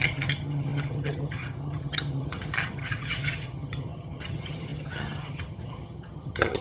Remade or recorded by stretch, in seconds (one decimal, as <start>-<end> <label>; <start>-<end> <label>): 0.0-6.6 remade